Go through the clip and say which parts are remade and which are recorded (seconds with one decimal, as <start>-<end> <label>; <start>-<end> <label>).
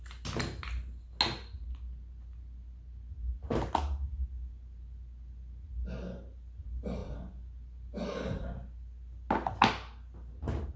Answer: 0.0-10.8 recorded